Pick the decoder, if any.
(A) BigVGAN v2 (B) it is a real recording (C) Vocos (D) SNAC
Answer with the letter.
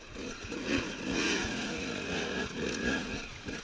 C